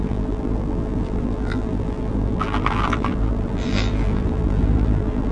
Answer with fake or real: fake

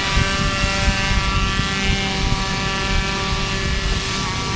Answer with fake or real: real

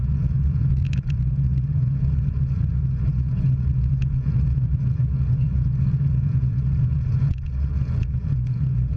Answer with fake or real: fake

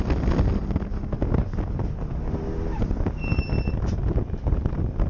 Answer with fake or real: real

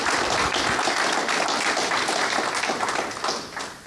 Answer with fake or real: real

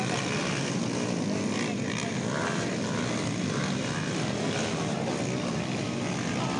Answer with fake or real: real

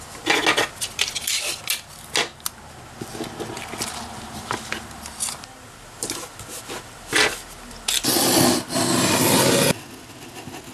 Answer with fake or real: real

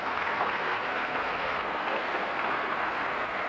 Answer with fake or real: fake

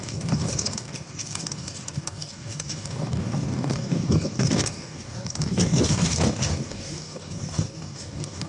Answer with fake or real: fake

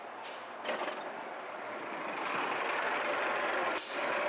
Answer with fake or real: real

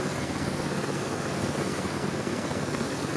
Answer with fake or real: fake